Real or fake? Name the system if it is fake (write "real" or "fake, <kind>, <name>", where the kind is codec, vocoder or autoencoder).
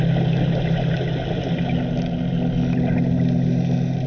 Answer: real